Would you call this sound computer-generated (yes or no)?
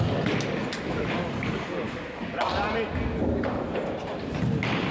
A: no